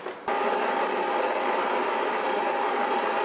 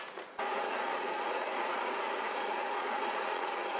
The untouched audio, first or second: first